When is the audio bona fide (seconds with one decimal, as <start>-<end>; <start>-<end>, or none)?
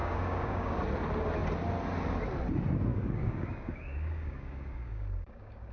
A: 0.8-2.9